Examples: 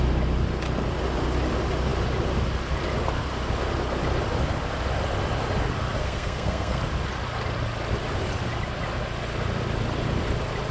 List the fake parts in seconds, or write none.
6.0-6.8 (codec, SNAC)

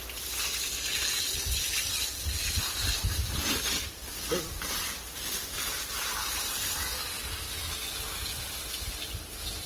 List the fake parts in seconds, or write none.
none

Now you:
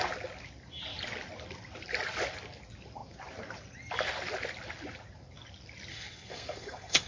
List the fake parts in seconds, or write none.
5.9-7.1 (codec, SNAC)

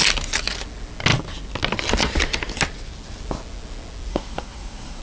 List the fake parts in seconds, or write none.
4.1-5.0 (codec, SNAC)